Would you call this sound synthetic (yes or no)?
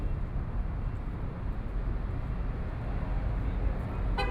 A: no